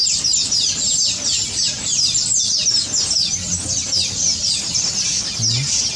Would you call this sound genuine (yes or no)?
yes